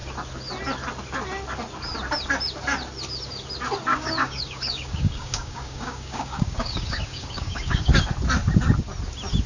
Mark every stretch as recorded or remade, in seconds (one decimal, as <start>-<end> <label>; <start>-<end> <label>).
0.0-3.9 recorded; 3.9-7.9 remade; 7.9-9.5 recorded